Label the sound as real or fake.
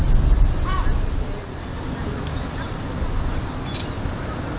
real